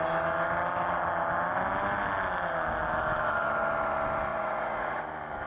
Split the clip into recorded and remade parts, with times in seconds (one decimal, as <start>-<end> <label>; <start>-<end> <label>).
0.0-4.3 recorded; 4.3-5.0 remade; 5.0-5.5 recorded